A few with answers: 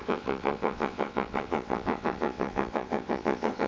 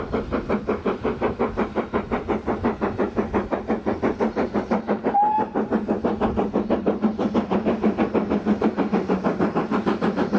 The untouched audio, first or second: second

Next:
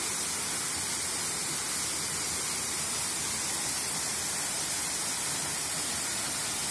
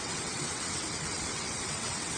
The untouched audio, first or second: first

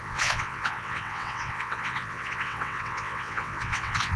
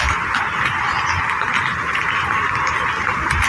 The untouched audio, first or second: second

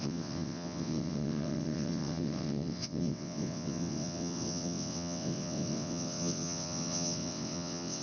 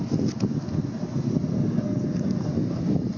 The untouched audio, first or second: second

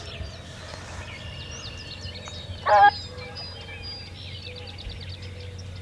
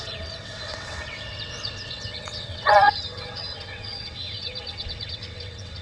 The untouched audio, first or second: first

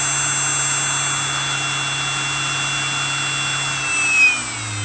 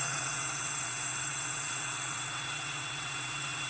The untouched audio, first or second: first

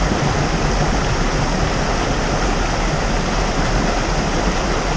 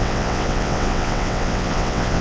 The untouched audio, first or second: first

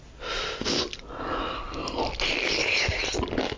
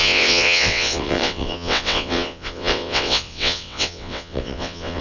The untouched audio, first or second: first